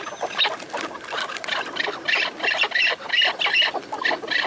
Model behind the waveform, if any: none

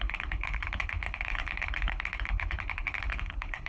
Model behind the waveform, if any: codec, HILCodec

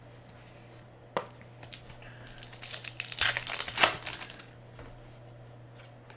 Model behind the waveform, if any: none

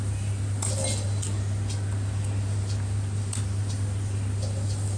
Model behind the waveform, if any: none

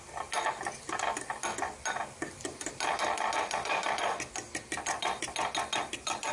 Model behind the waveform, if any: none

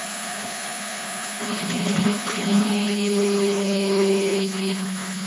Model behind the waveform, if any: codec, HILCodec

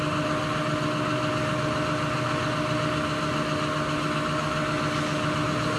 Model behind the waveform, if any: none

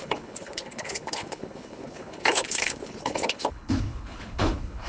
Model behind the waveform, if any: codec, HILCodec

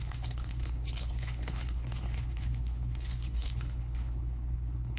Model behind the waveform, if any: codec, HILCodec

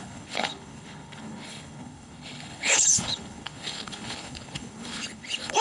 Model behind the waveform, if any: codec, HILCodec